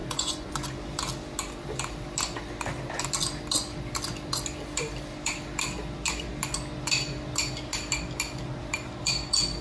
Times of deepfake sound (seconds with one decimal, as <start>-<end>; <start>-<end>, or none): 0.0-0.5